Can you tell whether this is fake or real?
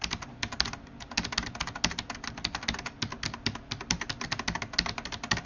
real